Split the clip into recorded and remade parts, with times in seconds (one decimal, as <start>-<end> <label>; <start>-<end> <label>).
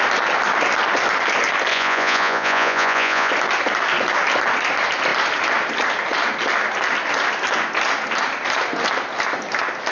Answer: 0.0-1.7 recorded; 1.7-3.3 remade; 3.3-9.9 recorded